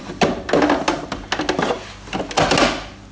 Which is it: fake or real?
real